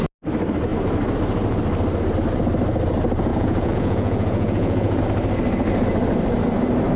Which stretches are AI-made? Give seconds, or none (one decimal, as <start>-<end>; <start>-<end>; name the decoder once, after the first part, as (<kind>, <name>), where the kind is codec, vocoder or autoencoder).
3.3-5.0 (vocoder, Vocos)